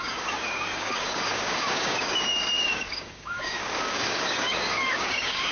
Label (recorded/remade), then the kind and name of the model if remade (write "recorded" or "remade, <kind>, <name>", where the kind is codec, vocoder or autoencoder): remade, codec, DAC